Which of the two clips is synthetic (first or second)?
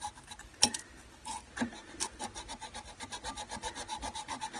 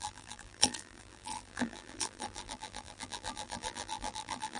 second